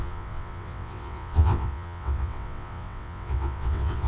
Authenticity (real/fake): fake